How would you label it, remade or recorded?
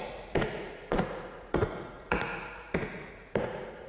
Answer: remade